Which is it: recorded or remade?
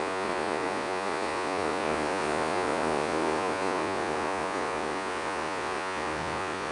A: remade